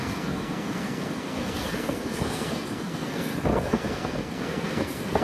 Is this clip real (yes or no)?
no